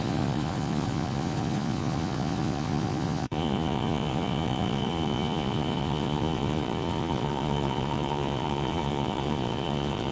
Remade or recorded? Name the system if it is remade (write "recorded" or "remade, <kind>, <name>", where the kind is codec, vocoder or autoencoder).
remade, vocoder, Vocos